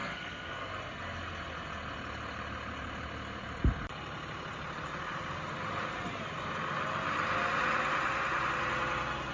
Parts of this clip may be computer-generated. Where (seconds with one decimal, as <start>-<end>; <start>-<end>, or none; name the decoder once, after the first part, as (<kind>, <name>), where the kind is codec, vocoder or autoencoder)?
0.0-0.7 (codec, SNAC)

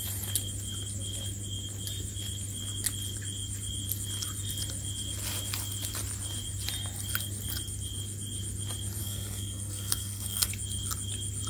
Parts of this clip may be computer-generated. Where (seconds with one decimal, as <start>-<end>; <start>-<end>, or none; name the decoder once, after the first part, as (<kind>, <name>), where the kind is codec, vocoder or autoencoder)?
9.0-10.5 (codec, SNAC)

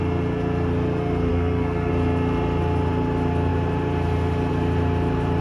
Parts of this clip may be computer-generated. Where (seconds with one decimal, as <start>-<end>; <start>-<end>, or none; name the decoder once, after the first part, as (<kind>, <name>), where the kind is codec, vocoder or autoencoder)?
1.3-1.9 (codec, SNAC)

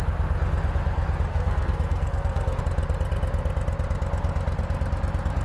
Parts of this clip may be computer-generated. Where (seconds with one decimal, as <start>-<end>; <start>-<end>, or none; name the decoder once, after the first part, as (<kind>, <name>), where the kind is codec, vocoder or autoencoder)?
1.3-2.6 (codec, SNAC)

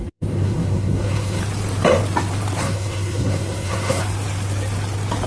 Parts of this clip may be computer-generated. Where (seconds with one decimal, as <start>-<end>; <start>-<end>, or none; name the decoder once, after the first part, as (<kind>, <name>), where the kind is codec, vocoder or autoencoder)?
0.0-1.4 (codec, SNAC); 2.6-4.0

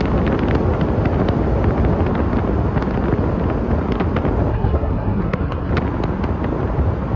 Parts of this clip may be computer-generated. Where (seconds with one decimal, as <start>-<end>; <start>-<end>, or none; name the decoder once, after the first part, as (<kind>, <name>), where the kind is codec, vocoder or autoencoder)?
4.5-5.7 (codec, SNAC)

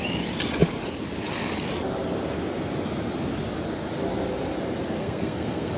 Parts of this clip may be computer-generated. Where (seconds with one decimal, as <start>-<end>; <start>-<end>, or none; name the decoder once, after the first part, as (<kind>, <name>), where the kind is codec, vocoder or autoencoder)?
5.0-5.8 (codec, SNAC)

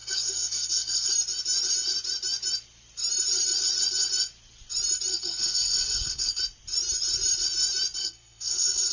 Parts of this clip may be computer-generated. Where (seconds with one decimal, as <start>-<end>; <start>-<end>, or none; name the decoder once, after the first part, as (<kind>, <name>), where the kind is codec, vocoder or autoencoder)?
0.0-1.1 (codec, SNAC); 5.1-6.4; 8.0-8.9